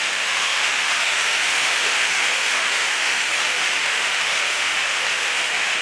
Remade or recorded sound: remade